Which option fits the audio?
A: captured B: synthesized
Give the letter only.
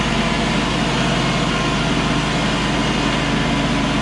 A